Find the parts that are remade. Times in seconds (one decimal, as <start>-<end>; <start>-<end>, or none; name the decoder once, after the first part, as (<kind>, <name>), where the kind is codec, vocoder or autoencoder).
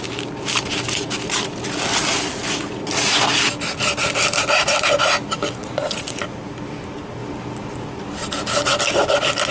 5.6-6.2 (vocoder, Vocos)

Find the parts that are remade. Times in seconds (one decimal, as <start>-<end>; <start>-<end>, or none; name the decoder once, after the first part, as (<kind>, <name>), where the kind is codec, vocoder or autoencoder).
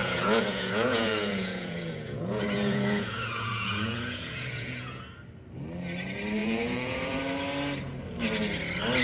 0.0-5.0 (vocoder, Vocos); 6.4-7.2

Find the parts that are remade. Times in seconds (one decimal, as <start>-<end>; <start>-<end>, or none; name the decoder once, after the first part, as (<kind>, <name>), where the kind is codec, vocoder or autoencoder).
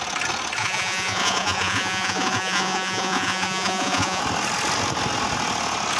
0.6-4.2 (vocoder, Vocos)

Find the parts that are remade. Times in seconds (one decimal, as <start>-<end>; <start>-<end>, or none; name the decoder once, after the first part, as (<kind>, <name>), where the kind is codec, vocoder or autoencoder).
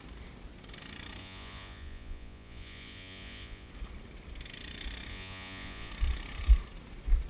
1.2-3.7 (vocoder, Vocos); 5.1-5.9